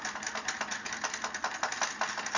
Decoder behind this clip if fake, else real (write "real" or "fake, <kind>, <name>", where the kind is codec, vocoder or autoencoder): real